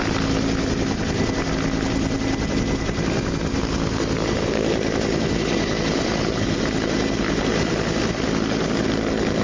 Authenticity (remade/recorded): recorded